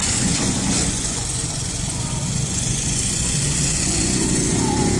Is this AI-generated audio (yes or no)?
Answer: yes